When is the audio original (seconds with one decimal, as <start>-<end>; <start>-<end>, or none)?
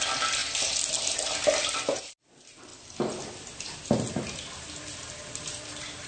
0.0-6.1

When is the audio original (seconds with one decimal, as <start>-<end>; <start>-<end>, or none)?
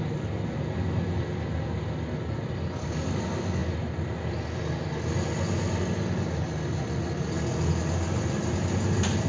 0.0-9.3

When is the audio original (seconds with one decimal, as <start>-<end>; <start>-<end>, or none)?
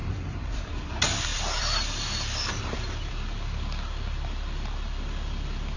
0.8-1.3; 3.1-5.8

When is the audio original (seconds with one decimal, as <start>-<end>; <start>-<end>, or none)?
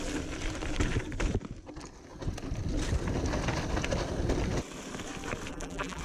0.0-5.5